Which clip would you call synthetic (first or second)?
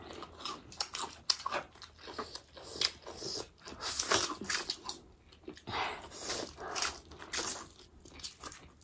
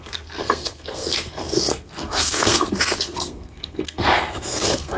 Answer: second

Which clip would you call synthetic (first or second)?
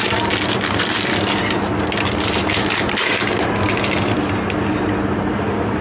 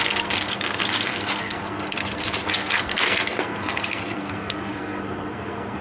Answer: second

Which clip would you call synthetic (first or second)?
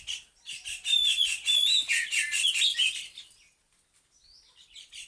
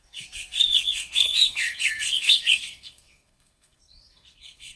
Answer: second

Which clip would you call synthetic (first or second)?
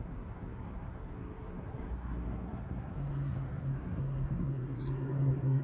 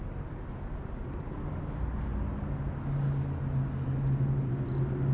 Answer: first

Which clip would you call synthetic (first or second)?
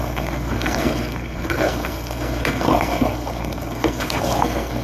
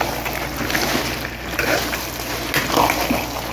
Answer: first